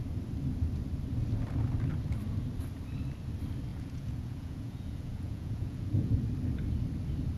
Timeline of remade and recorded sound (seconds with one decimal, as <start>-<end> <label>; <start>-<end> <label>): 0.0-3.7 recorded; 3.7-6.2 remade; 6.2-7.4 recorded